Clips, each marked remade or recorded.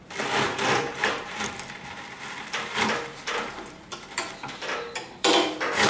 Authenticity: remade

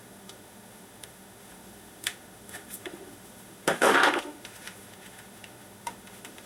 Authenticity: remade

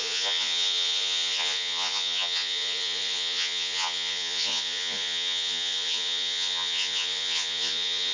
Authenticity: remade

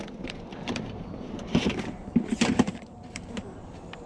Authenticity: remade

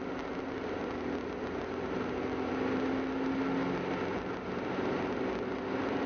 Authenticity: recorded